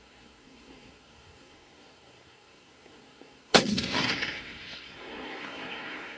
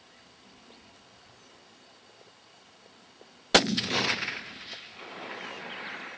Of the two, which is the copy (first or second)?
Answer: first